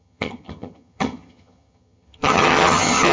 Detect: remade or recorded remade